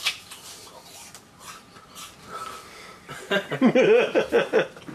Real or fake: real